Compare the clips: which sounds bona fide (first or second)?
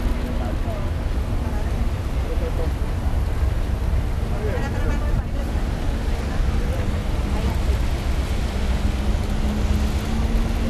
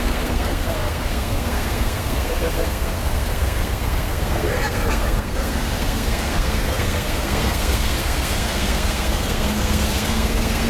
first